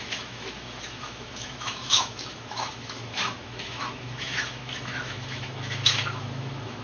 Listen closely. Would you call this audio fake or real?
fake